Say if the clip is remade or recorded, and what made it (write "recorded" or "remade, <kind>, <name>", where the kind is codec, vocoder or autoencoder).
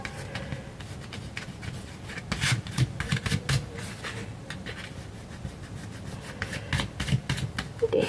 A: recorded